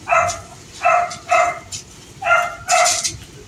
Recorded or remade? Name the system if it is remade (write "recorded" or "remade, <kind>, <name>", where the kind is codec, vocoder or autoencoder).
recorded